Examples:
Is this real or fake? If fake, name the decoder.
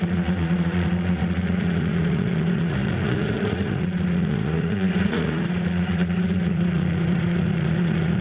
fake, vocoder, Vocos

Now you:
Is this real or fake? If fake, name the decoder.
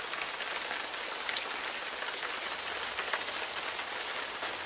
real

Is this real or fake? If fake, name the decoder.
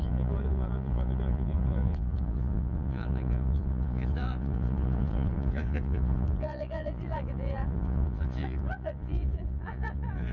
fake, vocoder, Vocos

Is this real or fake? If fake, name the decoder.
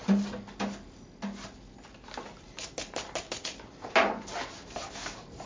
real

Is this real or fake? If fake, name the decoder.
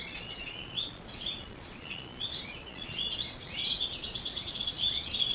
fake, vocoder, Vocos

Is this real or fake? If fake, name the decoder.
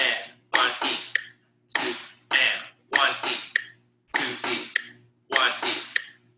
real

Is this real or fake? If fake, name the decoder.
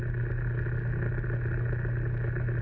real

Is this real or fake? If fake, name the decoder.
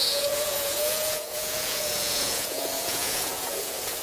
fake, vocoder, Vocos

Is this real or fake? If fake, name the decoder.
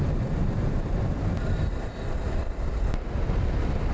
real